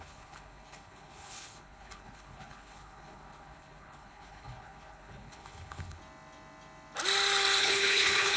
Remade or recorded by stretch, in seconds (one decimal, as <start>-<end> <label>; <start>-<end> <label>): 0.0-6.0 remade; 6.0-7.6 recorded; 7.6-8.4 remade